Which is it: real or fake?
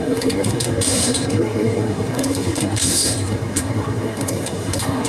fake